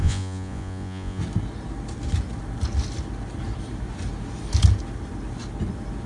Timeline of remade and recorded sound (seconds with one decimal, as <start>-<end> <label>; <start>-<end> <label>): 0.0-1.2 remade; 1.2-6.1 recorded